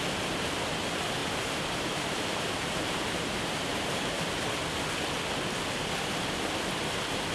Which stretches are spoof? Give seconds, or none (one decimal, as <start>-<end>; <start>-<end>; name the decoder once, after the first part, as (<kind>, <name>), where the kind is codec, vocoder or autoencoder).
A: 1.2-4.2 (vocoder, BigVGAN v2)